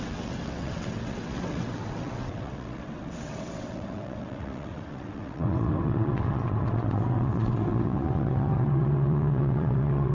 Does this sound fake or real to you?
fake